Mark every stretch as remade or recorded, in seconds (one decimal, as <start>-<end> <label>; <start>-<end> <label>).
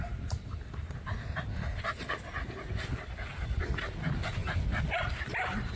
0.0-5.8 recorded